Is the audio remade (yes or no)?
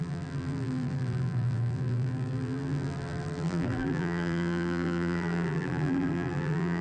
yes